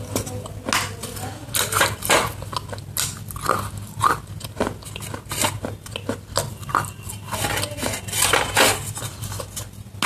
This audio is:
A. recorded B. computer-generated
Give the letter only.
A